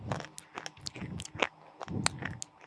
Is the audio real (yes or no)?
yes